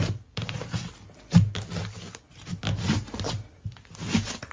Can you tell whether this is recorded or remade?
recorded